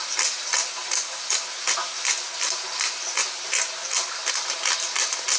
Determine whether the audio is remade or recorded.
recorded